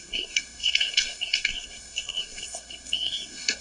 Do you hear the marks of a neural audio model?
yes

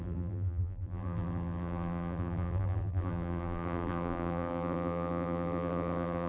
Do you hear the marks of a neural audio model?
yes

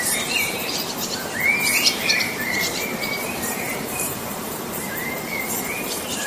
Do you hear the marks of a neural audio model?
yes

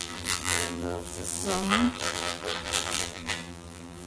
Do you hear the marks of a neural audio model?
yes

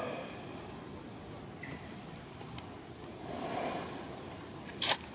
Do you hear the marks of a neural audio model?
no